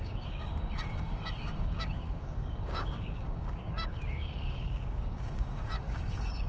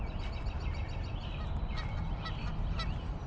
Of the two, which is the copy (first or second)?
first